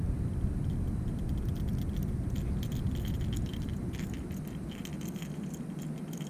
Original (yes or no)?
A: yes